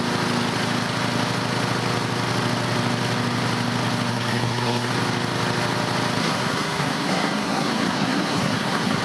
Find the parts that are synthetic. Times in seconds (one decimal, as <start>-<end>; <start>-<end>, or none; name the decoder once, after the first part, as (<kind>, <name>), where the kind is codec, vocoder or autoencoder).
4.1-4.9 (codec, SNAC); 6.2-9.0